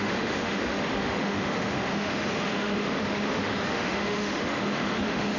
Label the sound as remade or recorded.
remade